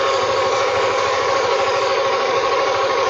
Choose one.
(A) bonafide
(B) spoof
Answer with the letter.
B